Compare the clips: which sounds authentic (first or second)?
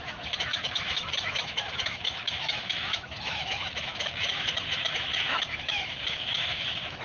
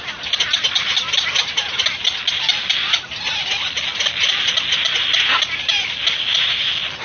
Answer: second